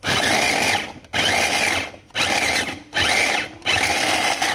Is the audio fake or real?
real